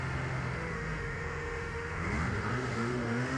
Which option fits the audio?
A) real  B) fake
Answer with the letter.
B